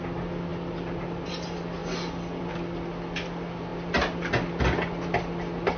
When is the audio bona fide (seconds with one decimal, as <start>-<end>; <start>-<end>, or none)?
0.0-0.5; 1.0-1.8; 2.4-5.8